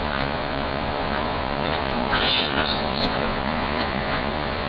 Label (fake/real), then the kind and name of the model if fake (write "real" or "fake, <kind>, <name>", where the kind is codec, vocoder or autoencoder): fake, vocoder, Vocos